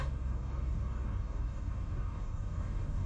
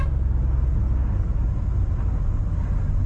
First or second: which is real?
second